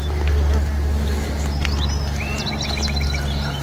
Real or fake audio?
real